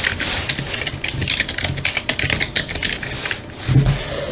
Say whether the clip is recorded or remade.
recorded